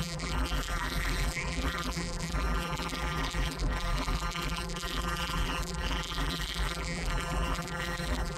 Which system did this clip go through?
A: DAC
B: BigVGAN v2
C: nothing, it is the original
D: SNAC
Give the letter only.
B